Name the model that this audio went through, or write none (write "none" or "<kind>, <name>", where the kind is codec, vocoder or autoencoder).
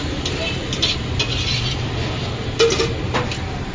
none